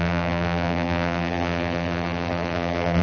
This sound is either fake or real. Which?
fake